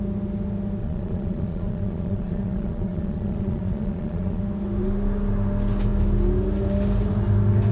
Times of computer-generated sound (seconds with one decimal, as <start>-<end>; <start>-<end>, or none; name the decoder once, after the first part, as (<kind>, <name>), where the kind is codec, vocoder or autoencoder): 0.8-4.4 (vocoder, Vocos)